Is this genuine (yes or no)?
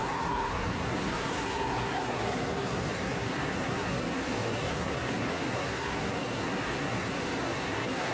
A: no